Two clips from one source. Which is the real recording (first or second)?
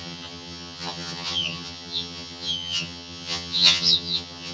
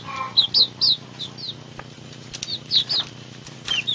second